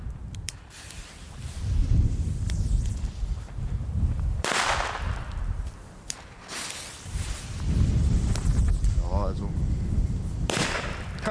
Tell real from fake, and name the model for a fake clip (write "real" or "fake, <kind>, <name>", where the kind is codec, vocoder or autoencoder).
fake, vocoder, BigVGAN v2